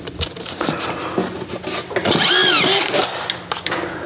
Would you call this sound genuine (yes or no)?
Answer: yes